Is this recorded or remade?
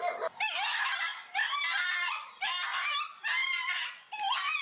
recorded